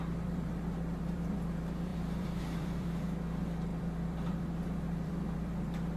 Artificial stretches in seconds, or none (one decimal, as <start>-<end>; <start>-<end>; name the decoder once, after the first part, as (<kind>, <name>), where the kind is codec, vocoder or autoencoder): 0.0-6.0 (vocoder, BigVGAN v2)